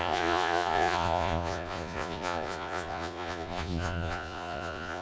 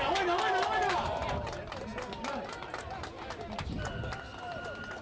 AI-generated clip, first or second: first